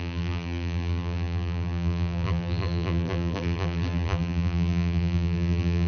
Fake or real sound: fake